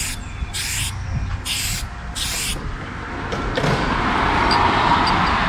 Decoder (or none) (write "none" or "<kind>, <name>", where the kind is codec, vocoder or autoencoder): none